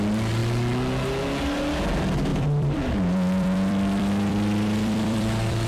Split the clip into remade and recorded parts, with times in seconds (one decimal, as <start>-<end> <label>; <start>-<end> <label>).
0.0-2.3 recorded; 2.3-5.7 remade